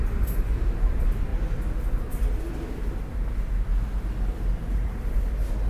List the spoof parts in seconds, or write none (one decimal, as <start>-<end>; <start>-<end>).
0.0-1.3; 4.7-5.7